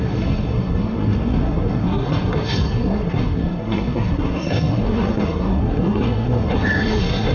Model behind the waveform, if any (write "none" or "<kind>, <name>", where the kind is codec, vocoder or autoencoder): codec, SNAC